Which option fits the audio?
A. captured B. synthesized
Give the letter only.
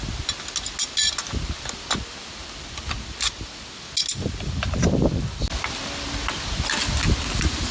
A